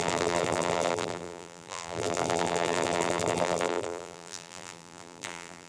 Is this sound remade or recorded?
remade